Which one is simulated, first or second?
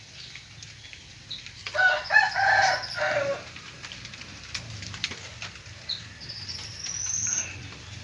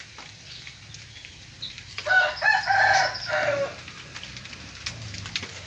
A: first